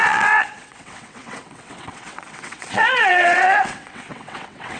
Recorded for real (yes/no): no